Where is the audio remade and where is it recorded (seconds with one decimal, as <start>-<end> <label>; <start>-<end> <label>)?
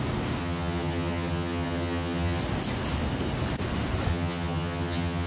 0.0-0.4 recorded; 0.4-2.4 remade; 2.4-4.1 recorded; 4.1-5.3 remade